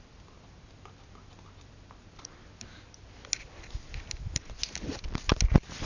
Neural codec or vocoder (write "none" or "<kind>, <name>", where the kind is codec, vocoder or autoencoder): none